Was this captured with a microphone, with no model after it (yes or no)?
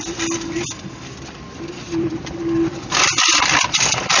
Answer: no